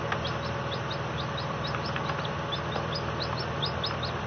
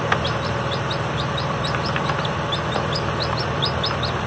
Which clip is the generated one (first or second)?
second